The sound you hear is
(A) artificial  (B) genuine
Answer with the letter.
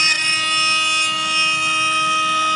B